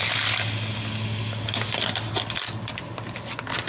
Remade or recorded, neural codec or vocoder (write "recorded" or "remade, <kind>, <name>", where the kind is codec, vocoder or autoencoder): recorded